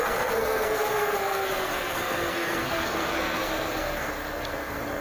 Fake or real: fake